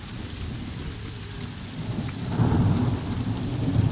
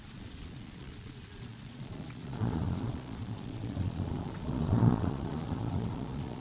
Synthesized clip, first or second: second